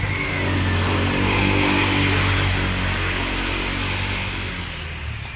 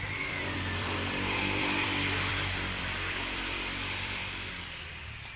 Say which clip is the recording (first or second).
first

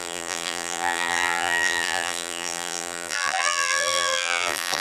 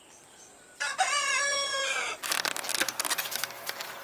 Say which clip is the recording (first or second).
second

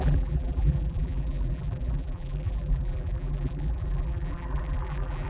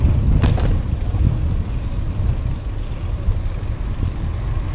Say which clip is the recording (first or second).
second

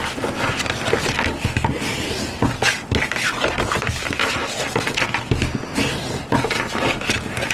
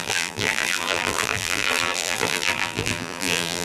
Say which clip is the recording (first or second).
first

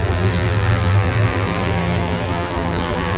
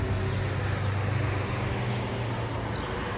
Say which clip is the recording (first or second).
second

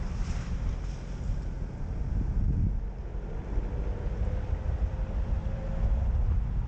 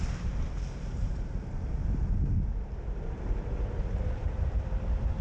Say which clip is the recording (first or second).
first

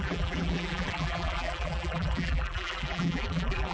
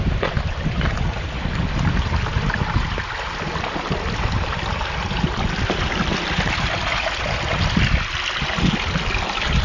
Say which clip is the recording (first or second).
second